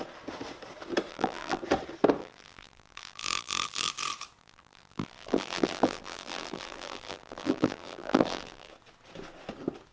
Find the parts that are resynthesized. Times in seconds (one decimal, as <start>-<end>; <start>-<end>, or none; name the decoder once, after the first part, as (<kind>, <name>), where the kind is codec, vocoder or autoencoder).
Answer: 1.1-1.6 (vocoder, BigVGAN v2); 2.2-3.9; 4.4-8.7

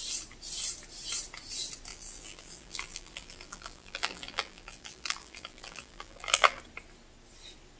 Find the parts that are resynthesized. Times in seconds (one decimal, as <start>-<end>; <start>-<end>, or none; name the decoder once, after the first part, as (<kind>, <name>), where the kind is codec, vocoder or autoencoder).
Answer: 1.9-6.6 (vocoder, BigVGAN v2)